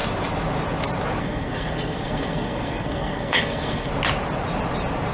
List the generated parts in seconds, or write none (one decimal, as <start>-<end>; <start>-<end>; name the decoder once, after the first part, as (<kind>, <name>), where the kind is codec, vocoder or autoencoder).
1.2-3.9 (codec, SNAC)